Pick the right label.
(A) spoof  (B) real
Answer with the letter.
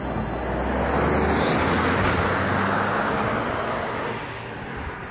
B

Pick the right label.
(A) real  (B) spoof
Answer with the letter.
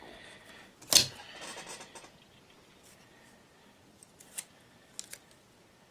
A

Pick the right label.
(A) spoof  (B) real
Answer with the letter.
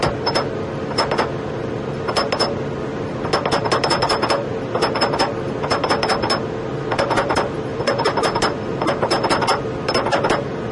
B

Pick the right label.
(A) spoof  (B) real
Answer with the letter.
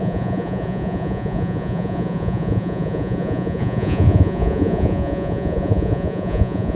A